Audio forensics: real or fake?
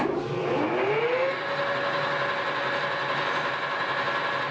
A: real